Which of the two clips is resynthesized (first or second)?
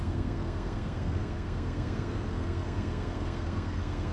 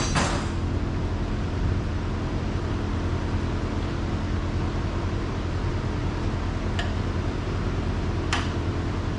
first